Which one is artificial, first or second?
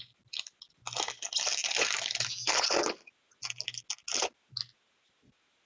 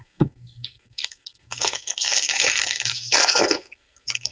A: second